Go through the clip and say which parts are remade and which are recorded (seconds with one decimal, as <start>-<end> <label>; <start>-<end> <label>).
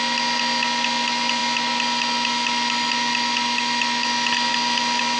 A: 0.0-5.2 recorded